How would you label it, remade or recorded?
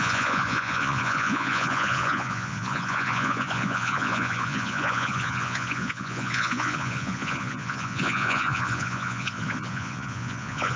remade